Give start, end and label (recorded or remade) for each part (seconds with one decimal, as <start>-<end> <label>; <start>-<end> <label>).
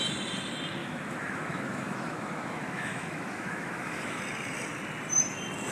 0.0-0.8 recorded; 0.8-4.2 remade; 4.2-5.7 recorded